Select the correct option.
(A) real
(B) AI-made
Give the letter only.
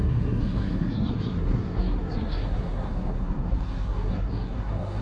B